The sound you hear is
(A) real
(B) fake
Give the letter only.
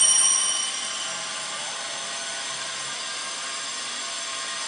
A